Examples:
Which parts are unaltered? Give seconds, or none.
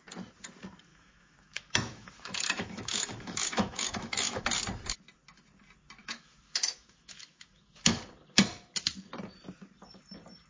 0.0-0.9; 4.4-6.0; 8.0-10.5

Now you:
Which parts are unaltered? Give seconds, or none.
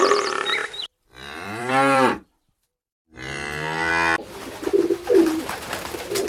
0.0-0.6; 3.9-4.7; 5.4-6.3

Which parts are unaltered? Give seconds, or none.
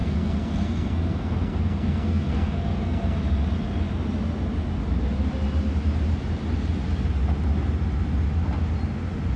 3.2-9.4